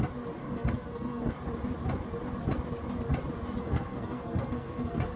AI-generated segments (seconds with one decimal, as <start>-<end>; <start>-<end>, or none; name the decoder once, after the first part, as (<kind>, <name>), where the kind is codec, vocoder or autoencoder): 0.4-1.3 (codec, SNAC); 3.6-5.2